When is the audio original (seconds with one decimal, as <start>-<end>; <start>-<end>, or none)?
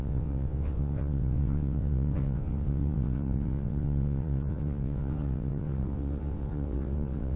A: none